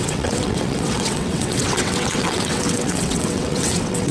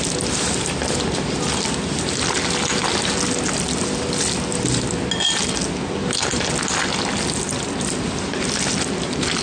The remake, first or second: first